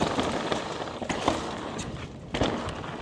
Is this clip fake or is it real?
real